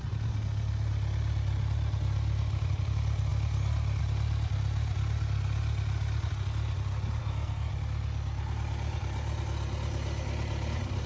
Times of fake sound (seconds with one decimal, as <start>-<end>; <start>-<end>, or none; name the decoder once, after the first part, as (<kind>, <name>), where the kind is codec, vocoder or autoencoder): 7.2-7.7 (codec, SNAC)